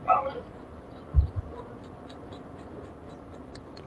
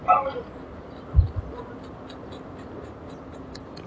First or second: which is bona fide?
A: second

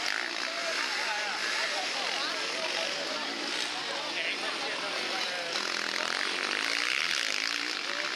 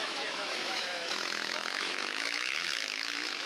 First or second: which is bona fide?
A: first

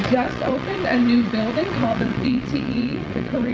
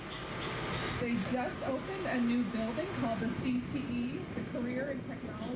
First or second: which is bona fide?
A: second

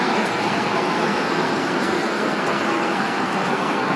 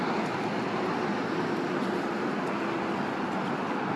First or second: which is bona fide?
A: second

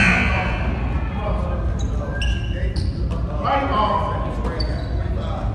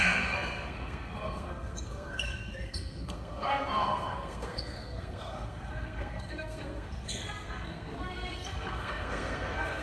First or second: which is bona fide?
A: first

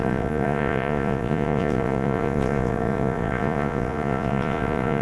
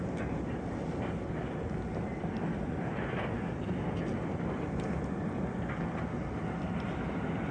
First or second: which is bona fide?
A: second